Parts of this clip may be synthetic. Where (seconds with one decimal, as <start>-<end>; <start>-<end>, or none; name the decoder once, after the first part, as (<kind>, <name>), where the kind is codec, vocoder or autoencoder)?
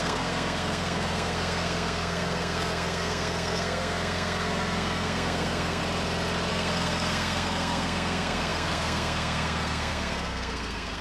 0.0-5.8 (codec, SNAC); 6.5-11.0